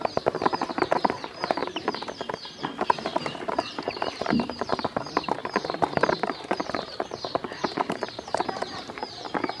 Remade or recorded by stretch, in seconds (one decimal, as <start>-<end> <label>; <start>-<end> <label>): 0.0-1.6 remade; 1.6-2.6 recorded; 2.6-9.6 remade